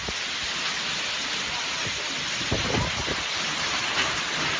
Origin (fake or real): real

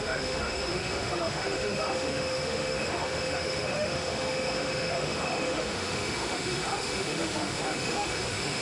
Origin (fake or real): fake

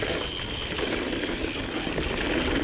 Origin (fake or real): real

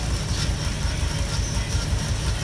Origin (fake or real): real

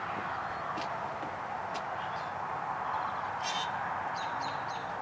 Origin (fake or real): real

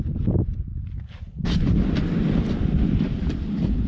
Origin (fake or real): real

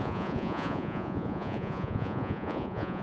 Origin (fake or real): fake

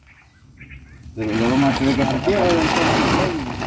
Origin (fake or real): real